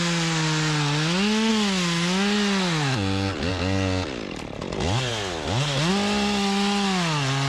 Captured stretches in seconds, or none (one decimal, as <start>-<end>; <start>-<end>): 0.0-7.5